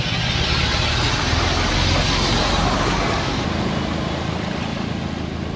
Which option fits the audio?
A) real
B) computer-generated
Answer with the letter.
A